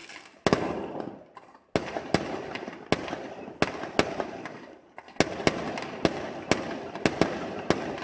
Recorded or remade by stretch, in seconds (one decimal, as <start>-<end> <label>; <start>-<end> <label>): 0.0-8.0 recorded

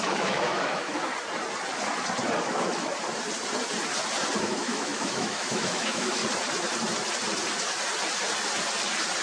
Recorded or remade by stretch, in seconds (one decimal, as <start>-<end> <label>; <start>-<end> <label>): 0.0-1.1 remade; 1.1-2.4 recorded; 2.4-2.9 remade; 2.9-4.4 recorded; 4.4-6.2 remade; 6.2-9.2 recorded

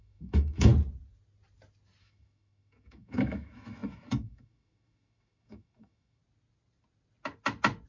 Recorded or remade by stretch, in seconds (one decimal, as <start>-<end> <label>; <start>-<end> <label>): 0.0-0.7 remade; 0.7-2.0 recorded; 2.0-6.2 remade; 6.2-7.9 recorded

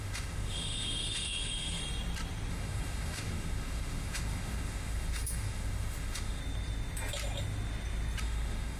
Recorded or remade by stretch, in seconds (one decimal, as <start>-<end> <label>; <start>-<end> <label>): 0.0-1.8 remade; 1.8-2.5 recorded; 2.5-6.4 remade; 6.4-8.2 recorded; 8.2-8.8 remade

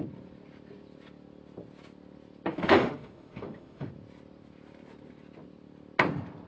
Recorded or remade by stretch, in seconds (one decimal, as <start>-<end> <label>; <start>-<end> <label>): 0.0-2.5 recorded; 2.5-3.9 remade; 3.9-6.5 recorded